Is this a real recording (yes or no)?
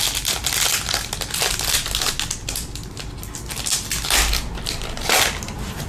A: yes